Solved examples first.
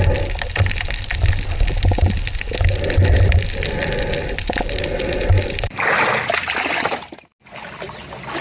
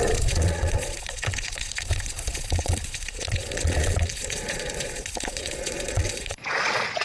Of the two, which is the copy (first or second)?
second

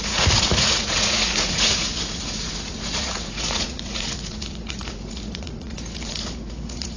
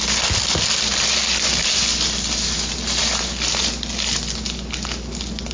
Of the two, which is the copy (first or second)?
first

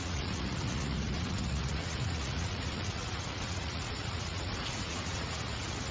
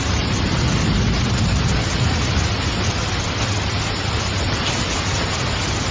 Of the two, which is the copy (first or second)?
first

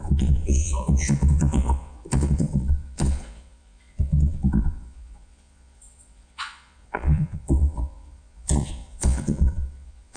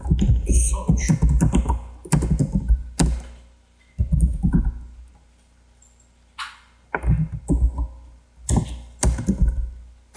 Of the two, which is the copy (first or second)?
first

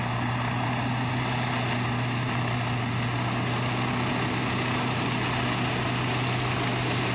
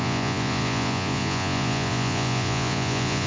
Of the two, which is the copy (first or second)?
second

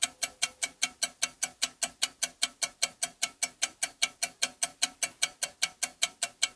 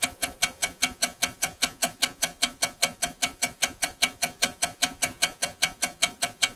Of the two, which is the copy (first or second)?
second